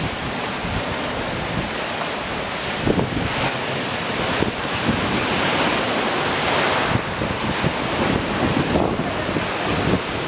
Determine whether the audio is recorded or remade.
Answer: recorded